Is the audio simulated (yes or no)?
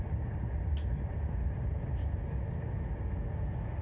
no